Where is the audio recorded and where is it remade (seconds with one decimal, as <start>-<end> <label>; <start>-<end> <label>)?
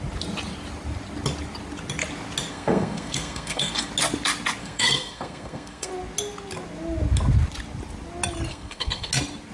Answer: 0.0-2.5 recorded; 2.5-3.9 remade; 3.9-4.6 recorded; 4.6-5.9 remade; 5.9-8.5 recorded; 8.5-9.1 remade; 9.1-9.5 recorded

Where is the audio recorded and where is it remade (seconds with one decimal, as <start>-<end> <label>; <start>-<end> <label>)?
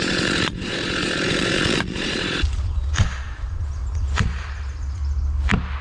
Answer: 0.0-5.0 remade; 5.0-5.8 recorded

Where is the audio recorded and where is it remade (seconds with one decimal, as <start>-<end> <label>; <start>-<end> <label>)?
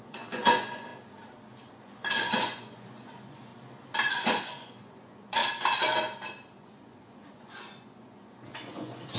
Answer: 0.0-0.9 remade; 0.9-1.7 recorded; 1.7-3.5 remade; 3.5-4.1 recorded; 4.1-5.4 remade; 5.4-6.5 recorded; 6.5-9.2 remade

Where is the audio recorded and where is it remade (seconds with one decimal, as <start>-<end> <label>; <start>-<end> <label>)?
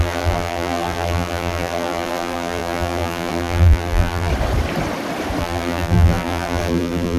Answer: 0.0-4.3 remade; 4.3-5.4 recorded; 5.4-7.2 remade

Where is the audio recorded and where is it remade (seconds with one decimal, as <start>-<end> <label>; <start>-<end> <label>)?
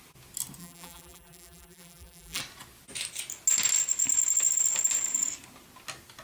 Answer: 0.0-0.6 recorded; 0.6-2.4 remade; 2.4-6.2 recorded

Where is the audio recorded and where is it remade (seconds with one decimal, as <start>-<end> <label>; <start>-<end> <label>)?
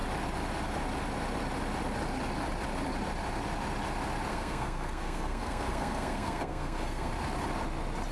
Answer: 0.0-4.3 recorded; 4.3-7.1 remade; 7.1-8.1 recorded